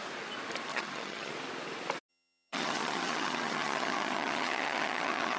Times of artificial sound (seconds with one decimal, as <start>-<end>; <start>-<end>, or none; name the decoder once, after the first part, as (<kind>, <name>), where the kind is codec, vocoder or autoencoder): 0.7-1.3 (vocoder, HiFi-GAN); 2.1-5.4

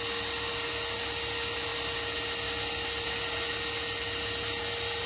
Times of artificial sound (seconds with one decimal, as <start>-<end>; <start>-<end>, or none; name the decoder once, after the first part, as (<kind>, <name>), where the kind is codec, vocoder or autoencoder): none

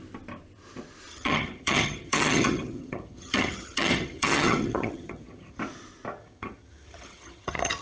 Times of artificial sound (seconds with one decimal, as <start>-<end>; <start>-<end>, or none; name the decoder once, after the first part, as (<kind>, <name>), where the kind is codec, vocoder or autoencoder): 1.1-5.6 (vocoder, HiFi-GAN); 6.2-7.8

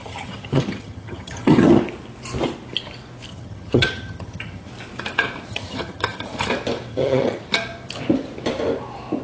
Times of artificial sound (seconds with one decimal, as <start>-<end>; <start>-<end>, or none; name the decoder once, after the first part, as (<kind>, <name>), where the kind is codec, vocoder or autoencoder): 0.0-1.8 (vocoder, HiFi-GAN); 3.3-4.7; 5.5-6.5; 6.9-7.4

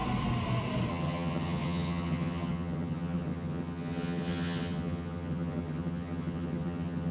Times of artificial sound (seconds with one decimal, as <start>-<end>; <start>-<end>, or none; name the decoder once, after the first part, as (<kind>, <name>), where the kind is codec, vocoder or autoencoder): 0.9-7.1 (vocoder, HiFi-GAN)